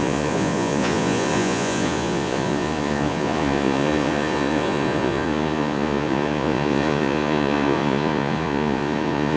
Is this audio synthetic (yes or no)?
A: yes